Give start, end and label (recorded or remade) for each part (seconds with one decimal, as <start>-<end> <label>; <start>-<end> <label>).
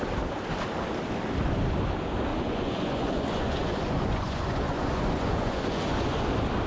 0.0-2.3 recorded; 2.3-6.3 remade; 6.3-6.7 recorded